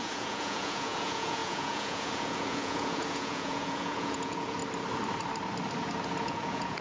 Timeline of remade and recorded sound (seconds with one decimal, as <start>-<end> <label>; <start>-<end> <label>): 0.0-4.6 remade; 4.6-6.2 recorded; 6.2-6.8 remade